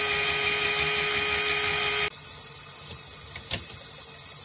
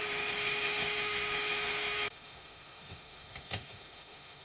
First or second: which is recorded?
first